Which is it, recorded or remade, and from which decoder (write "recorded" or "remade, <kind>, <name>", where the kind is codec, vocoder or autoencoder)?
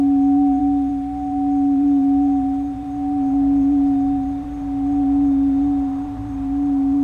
remade, vocoder, BigVGAN v2